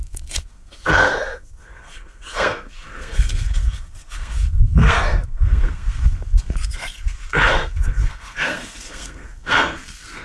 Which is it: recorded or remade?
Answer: remade